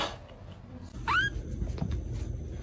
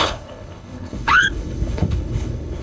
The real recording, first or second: first